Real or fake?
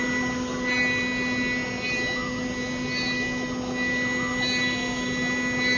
real